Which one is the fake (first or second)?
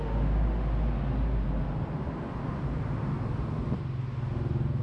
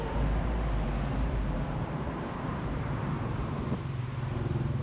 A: second